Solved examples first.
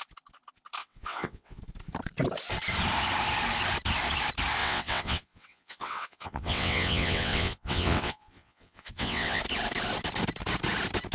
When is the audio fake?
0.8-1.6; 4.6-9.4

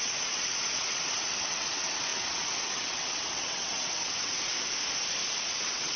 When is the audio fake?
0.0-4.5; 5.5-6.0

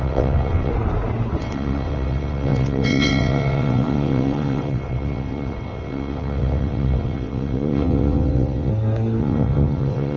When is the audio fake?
0.0-0.7; 1.4-8.7; 9.2-10.2

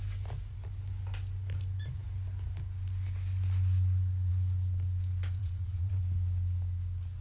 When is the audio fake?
5.4-6.0

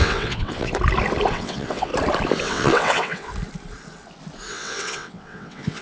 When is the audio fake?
0.0-0.7; 1.3-1.9; 2.4-3.3; 4.5-5.8

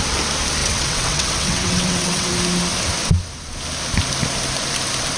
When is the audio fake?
0.6-2.3

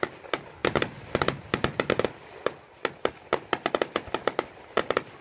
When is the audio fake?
none

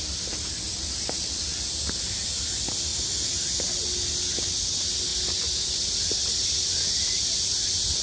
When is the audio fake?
none